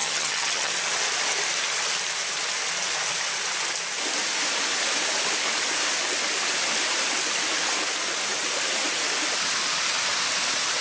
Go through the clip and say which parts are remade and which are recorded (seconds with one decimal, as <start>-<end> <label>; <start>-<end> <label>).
0.0-0.7 remade; 0.7-10.8 recorded